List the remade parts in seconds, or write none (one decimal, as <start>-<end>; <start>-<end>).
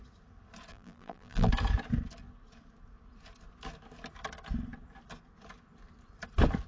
0.7-1.5